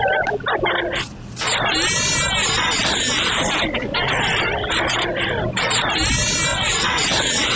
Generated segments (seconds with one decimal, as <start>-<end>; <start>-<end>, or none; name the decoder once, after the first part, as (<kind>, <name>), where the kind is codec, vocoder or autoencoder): 6.5-7.6 (vocoder, WaveNeXt)